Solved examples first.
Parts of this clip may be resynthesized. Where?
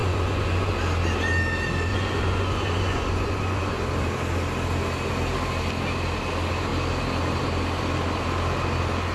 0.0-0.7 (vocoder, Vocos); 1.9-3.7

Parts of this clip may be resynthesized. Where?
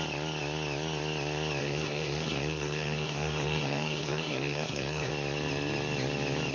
1.6-5.1 (codec, SNAC)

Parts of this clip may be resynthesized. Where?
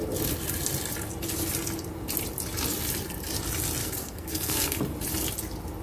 3.8-4.8 (codec, SNAC)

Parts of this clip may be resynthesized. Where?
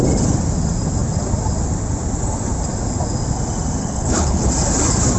3.8-4.5 (codec, HILCodec)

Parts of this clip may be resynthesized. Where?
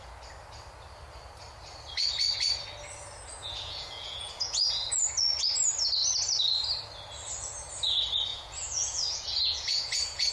3.4-5.1 (vocoder, Vocos); 8.3-10.3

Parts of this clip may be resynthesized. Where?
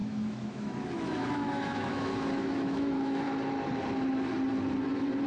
0.0-3.2 (autoencoder, DAC-VAE)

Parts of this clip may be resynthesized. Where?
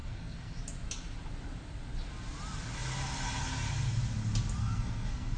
0.0-0.6 (codec, SNAC); 4.6-5.4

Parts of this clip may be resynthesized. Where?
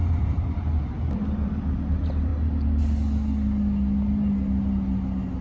0.0-2.3 (vocoder, BigVGAN v2)